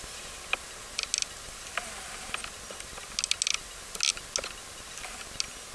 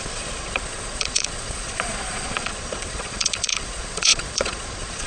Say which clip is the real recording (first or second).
first